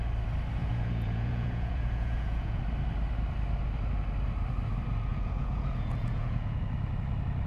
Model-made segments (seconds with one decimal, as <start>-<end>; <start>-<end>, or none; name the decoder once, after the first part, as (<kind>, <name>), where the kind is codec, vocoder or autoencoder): 0.6-2.6 (vocoder, Vocos); 5.1-6.6